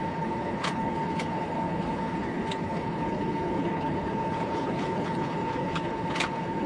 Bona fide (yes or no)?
no